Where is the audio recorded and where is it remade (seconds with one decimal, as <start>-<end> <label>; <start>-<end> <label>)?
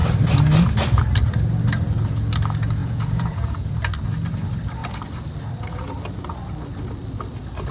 0.0-2.8 recorded; 2.8-3.7 remade; 3.7-7.7 recorded